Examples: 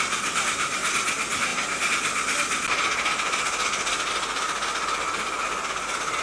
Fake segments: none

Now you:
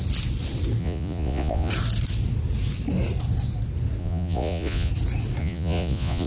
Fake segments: 0.8-1.7; 4.0-4.9; 5.4-6.3

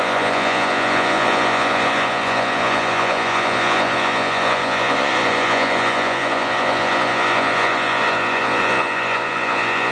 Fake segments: 0.0-9.9